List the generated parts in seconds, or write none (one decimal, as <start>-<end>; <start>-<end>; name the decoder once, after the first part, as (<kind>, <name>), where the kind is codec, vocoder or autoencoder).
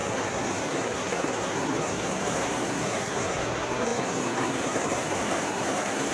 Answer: 0.0-6.1 (codec, SNAC)